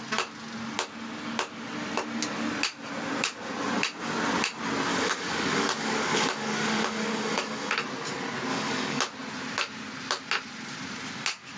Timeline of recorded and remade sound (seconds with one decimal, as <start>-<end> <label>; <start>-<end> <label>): 0.0-4.9 recorded; 4.9-7.7 remade; 7.7-8.5 recorded; 8.5-9.0 remade; 9.0-11.6 recorded